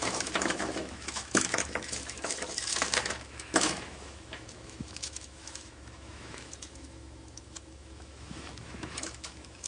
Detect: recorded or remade remade